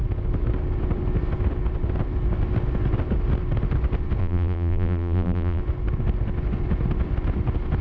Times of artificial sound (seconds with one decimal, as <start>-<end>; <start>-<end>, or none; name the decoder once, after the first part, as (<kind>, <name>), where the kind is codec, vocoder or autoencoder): 4.2-5.6 (vocoder, BigVGAN v2)